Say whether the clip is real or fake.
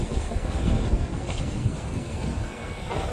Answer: fake